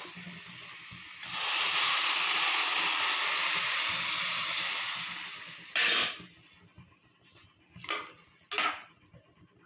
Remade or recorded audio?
recorded